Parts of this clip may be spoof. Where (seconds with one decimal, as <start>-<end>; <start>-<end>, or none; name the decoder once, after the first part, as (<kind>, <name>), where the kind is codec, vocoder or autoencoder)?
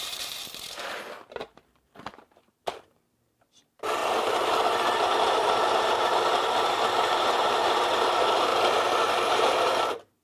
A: 0.0-4.0 (vocoder, BigVGAN v2); 5.2-8.5; 9.3-10.2